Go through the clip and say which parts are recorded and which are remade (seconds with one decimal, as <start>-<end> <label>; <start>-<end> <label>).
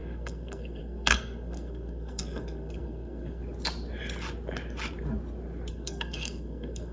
0.0-3.4 remade; 3.4-5.7 recorded; 5.7-6.9 remade